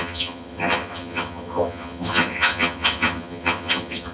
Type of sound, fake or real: fake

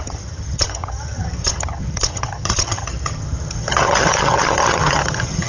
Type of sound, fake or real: fake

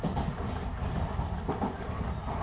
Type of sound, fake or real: real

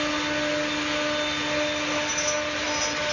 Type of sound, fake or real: real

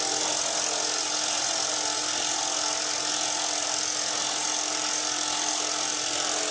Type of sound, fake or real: real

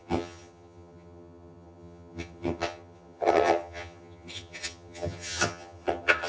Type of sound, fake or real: fake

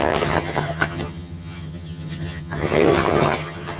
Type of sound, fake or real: fake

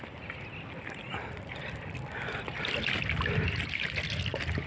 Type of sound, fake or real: real